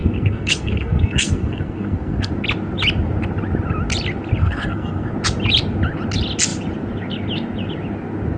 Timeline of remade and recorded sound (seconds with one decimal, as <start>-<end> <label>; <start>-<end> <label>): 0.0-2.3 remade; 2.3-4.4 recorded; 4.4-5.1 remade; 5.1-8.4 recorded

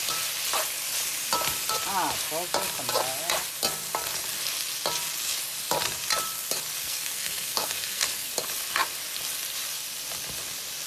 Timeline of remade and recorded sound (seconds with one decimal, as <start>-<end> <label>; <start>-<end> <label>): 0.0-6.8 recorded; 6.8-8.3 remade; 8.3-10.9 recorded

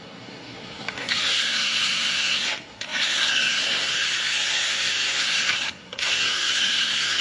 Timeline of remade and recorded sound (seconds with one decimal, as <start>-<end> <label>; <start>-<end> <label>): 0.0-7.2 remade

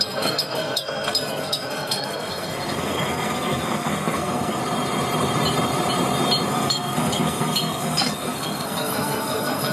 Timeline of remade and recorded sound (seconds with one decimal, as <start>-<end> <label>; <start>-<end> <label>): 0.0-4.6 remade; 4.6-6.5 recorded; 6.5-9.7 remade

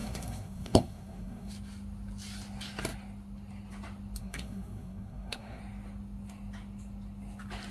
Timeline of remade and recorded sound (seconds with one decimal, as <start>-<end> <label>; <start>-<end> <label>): 0.0-1.5 remade; 1.5-4.2 recorded; 4.2-5.6 remade; 5.6-7.7 recorded